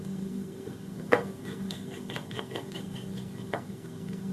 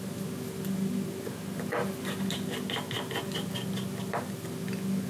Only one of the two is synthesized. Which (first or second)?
first